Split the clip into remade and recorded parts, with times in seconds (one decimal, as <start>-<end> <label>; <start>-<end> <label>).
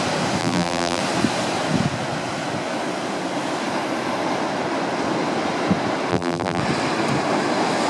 0.0-0.4 recorded; 0.4-1.0 remade; 1.0-6.1 recorded; 6.1-6.6 remade; 6.6-7.9 recorded